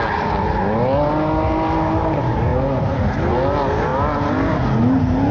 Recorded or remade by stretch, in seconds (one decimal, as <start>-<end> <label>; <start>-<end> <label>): 0.0-5.3 recorded